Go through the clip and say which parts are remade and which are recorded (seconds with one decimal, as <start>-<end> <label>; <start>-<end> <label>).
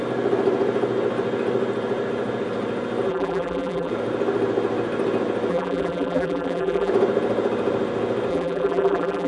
0.0-3.1 recorded; 3.1-3.9 remade; 3.9-5.5 recorded; 5.5-6.9 remade; 6.9-8.3 recorded; 8.3-9.3 remade